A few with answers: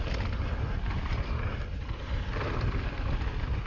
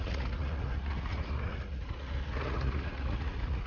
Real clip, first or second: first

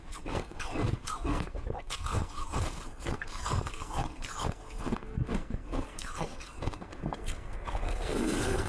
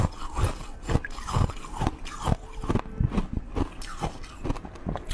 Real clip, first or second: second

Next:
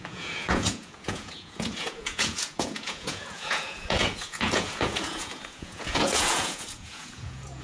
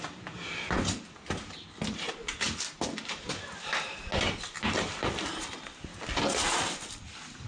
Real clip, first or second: second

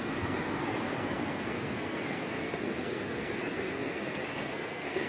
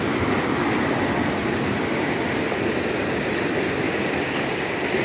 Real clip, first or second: second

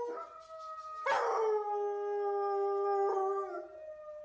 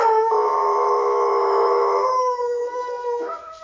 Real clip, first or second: first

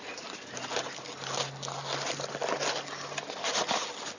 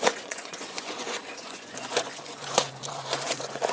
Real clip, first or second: first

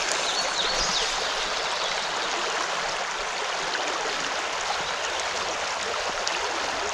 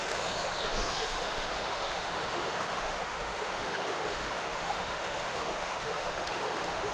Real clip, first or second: first